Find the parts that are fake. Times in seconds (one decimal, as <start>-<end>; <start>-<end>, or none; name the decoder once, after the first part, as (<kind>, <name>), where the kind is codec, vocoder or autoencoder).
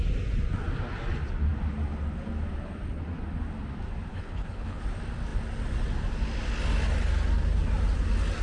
4.1-4.8 (codec, HILCodec)